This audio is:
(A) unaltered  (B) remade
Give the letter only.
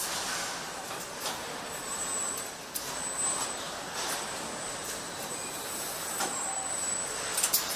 A